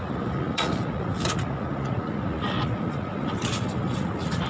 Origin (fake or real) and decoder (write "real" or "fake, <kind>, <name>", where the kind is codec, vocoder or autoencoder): fake, vocoder, Vocos